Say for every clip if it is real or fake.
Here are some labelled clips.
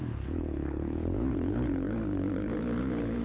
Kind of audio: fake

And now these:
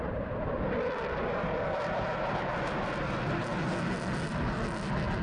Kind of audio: real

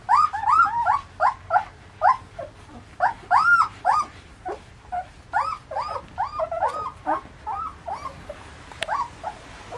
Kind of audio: real